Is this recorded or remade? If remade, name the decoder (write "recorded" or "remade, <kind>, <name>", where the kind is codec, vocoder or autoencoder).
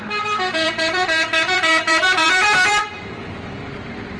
remade, vocoder, BigVGAN v2